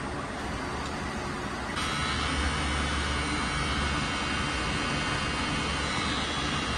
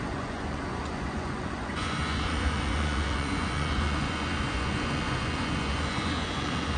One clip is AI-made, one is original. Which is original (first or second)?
first